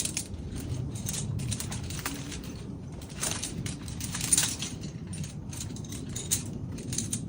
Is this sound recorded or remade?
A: remade